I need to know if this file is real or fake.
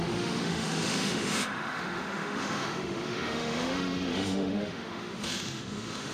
fake